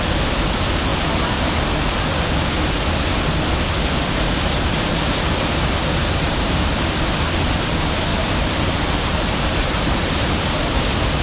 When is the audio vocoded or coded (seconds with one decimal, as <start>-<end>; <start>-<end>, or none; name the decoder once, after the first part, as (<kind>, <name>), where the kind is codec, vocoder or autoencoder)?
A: 6.0-6.6 (vocoder, BigVGAN v2); 8.1-10.4